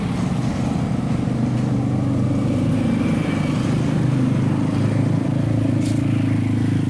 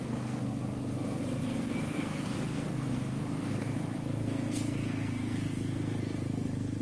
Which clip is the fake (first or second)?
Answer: second